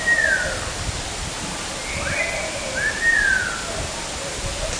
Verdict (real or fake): real